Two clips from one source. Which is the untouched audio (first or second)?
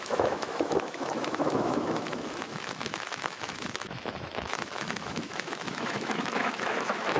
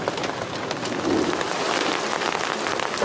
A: second